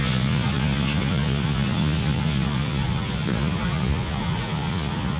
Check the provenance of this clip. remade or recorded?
remade